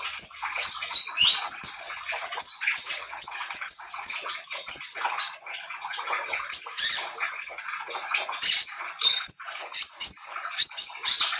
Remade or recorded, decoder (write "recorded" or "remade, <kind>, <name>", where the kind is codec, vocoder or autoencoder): remade, vocoder, Vocos